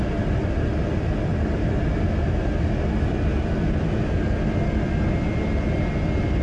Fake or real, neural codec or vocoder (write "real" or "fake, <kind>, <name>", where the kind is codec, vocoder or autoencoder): real